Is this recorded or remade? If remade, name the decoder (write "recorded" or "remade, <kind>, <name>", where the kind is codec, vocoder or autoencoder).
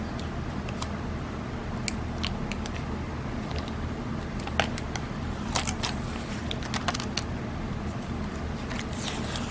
recorded